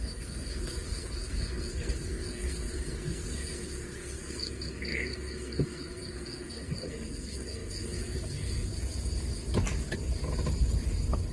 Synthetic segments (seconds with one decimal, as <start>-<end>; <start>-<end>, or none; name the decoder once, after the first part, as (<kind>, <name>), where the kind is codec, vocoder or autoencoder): 0.0-8.7 (codec, SNAC)